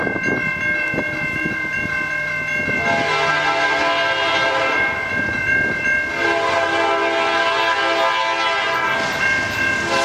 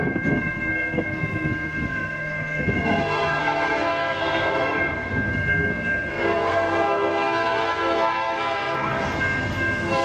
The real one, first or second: first